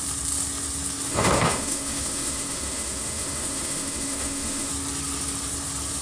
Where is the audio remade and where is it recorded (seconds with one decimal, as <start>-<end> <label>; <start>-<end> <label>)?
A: 0.0-1.1 recorded; 1.1-4.7 remade; 4.7-6.0 recorded